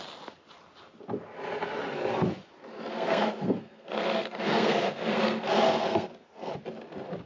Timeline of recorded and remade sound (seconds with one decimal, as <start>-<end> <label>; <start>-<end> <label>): 0.0-2.9 recorded; 2.9-6.5 remade; 6.5-7.3 recorded